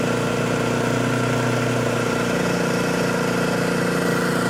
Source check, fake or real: real